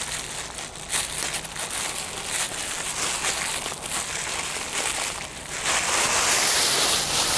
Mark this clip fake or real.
real